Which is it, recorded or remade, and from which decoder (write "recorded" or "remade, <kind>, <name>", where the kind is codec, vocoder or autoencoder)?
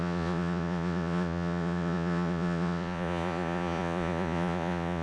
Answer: remade, vocoder, Vocos